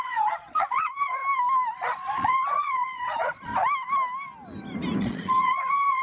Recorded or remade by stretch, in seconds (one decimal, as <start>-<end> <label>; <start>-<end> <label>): 0.0-1.2 remade; 1.2-1.7 recorded; 1.7-3.5 remade; 3.5-5.0 recorded; 5.0-6.0 remade